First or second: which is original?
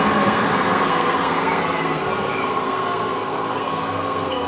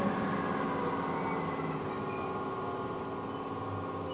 second